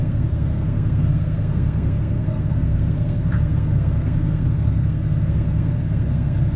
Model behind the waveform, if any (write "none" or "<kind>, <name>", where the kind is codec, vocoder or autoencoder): codec, SNAC